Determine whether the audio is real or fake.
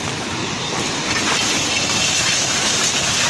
real